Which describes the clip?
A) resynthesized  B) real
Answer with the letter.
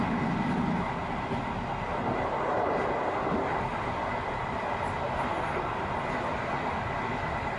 B